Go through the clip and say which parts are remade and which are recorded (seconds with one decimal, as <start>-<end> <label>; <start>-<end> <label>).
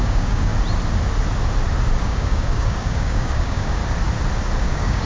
0.0-0.5 remade; 0.5-2.0 recorded; 2.0-3.8 remade; 3.8-4.6 recorded; 4.6-5.1 remade